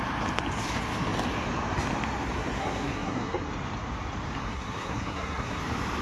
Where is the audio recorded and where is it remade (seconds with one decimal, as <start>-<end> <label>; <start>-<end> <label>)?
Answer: 0.0-2.6 recorded; 2.6-3.5 remade; 3.5-4.4 recorded; 4.4-5.6 remade; 5.6-6.0 recorded